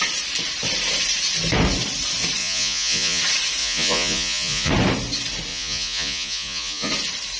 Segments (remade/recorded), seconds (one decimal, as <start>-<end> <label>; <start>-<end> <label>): 0.0-2.4 recorded; 2.4-3.2 remade; 3.2-3.6 recorded; 3.6-4.7 remade; 4.7-5.5 recorded; 5.5-6.9 remade; 6.9-7.4 recorded